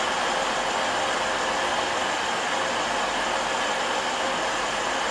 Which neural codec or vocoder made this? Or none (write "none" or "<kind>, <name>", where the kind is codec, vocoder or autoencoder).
none